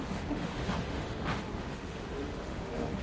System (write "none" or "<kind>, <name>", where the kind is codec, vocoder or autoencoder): autoencoder, DAC-VAE